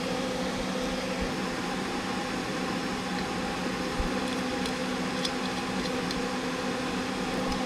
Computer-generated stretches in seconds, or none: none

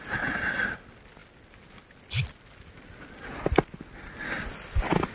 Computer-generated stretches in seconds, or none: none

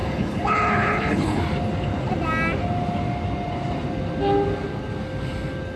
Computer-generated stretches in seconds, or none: 0.0-1.4 (codec, HILCodec)

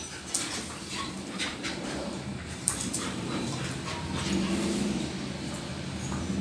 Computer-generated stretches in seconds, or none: 1.5-3.4 (vocoder, BigVGAN v2)

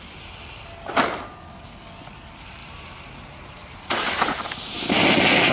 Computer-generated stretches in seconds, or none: 2.6-4.9 (vocoder, BigVGAN v2)

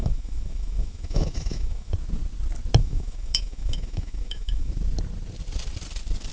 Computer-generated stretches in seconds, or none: 0.0-1.9 (autoencoder, DAC-VAE); 2.8-4.7